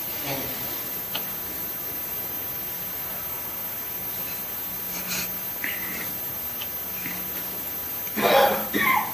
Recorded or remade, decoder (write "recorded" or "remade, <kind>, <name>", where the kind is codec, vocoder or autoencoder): recorded